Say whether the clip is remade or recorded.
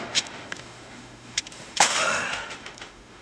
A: remade